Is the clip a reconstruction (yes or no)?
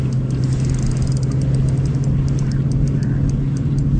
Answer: no